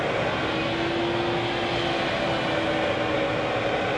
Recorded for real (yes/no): yes